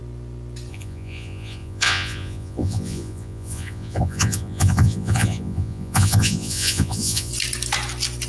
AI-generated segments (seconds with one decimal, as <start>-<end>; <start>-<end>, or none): 0.7-7.3